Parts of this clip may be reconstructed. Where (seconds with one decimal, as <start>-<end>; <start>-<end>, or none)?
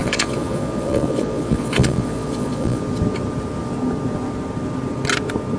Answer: 0.0-2.8